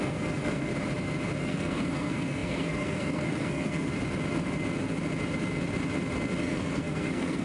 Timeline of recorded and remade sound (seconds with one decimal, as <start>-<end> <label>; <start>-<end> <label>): 0.0-0.7 remade; 0.7-1.4 recorded; 1.4-3.9 remade; 3.9-6.4 recorded; 6.4-7.4 remade